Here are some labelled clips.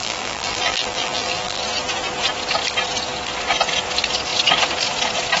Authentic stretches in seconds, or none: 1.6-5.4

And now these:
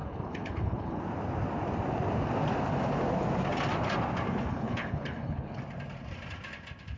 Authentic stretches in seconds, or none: 1.0-4.5; 5.6-7.0

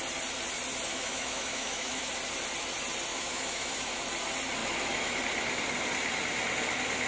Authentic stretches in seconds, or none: 0.0-0.9; 2.1-3.1; 4.0-4.6; 5.2-7.1